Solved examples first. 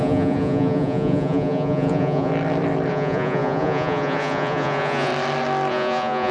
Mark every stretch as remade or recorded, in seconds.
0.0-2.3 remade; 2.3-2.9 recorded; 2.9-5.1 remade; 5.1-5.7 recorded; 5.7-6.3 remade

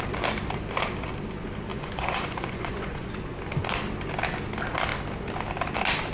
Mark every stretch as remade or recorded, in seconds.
0.0-1.7 recorded; 1.7-3.1 remade; 3.1-6.1 recorded

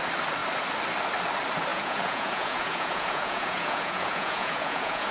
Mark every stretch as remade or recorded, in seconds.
0.0-1.7 recorded; 1.7-5.1 remade